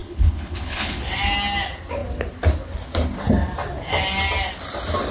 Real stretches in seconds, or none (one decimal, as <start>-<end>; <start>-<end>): 1.0-5.1

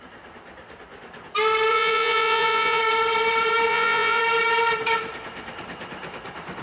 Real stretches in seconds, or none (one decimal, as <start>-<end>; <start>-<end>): 0.0-1.7; 2.8-3.7; 4.2-6.6

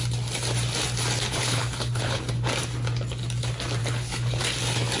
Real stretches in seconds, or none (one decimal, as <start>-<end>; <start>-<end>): 0.0-1.4; 2.3-3.8; 4.4-5.0